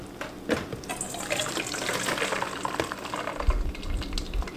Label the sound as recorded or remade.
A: recorded